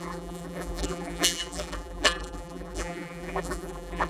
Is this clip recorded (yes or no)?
no